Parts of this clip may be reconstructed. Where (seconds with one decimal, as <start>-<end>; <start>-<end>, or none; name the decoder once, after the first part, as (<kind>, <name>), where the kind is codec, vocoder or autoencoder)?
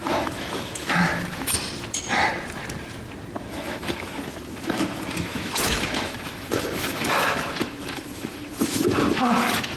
0.0-1.6 (autoencoder, DAC-VAE); 3.5-9.8